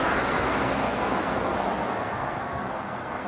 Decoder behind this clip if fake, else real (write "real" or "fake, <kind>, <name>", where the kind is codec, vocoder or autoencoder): fake, codec, SNAC